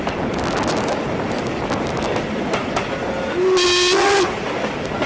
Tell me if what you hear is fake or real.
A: real